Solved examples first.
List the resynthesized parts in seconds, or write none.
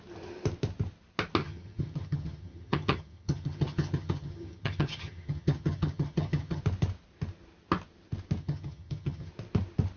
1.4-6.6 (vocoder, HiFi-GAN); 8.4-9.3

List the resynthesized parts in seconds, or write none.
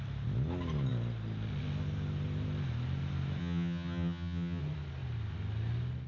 3.4-4.6 (vocoder, HiFi-GAN)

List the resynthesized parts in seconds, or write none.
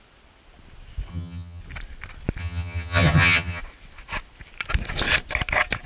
1.1-1.6 (vocoder, HiFi-GAN); 2.4-3.6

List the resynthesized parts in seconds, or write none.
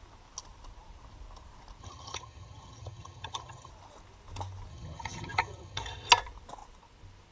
1.8-3.7 (vocoder, HiFi-GAN); 4.7-6.1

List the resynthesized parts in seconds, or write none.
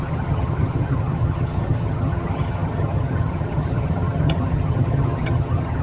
0.0-5.8 (vocoder, HiFi-GAN)